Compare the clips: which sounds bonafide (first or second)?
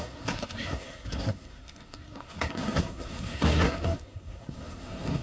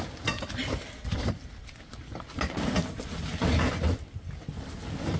second